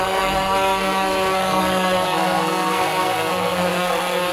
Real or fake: fake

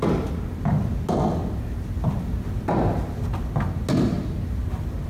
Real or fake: real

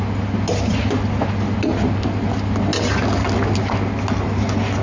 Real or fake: real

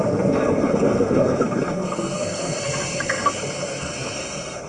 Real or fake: fake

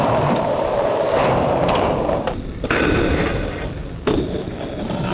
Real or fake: fake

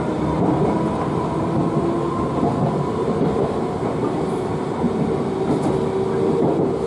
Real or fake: real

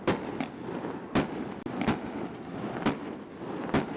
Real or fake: real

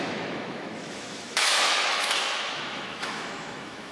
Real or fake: fake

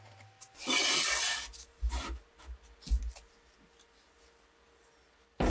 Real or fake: real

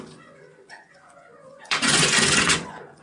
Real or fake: fake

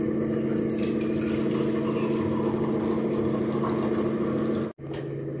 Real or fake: real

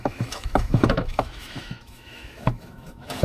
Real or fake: fake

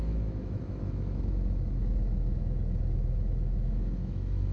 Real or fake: fake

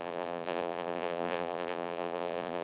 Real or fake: fake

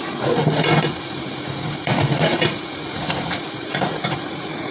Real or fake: fake